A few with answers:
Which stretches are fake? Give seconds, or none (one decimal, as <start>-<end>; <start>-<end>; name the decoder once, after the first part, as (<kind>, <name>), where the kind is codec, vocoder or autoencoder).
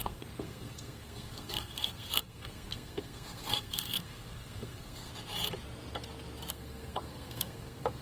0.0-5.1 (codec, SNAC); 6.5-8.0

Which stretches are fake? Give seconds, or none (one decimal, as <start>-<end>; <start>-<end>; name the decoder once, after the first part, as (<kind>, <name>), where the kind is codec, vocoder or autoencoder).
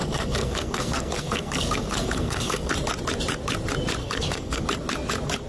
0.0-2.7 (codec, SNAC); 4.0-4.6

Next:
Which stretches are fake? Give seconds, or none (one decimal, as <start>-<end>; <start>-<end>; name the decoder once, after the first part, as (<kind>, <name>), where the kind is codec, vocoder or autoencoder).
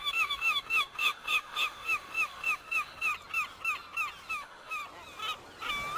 0.0-3.1 (autoencoder, DAC-VAE); 4.3-4.8